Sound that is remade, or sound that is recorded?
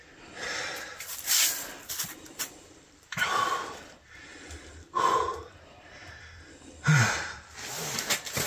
remade